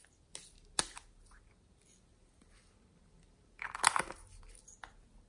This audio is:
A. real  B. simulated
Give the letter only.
A